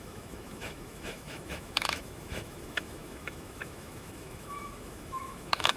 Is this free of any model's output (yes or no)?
no